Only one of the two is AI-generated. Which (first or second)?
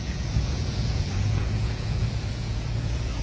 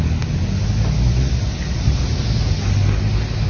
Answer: first